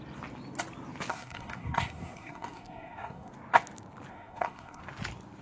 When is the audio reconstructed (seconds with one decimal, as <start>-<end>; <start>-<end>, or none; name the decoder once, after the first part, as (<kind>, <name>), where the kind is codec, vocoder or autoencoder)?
1.1-3.3 (codec, SNAC); 4.1-4.8